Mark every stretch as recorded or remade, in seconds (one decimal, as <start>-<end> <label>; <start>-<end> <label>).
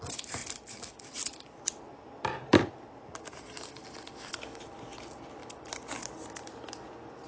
0.0-7.3 recorded